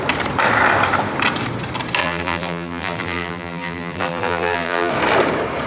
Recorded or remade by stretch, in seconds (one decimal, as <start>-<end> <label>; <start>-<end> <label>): 0.0-2.0 recorded; 2.0-4.9 remade; 4.9-5.7 recorded